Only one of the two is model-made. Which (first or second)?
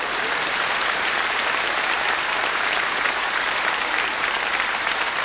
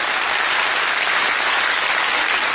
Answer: first